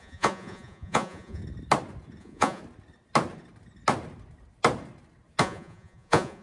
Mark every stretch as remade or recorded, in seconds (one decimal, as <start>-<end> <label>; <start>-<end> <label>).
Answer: 0.0-1.4 remade; 1.4-2.2 recorded; 2.2-2.6 remade; 2.6-5.4 recorded; 5.4-6.4 remade